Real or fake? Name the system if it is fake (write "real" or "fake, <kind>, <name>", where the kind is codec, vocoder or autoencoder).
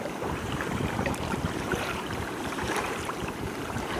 fake, vocoder, BigVGAN v2